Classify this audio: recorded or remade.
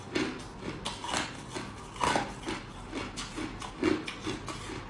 recorded